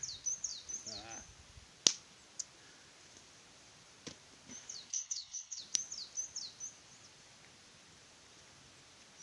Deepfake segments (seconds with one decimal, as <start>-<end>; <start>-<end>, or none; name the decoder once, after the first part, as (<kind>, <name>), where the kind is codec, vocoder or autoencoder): 4.9-5.6 (codec, HILCodec)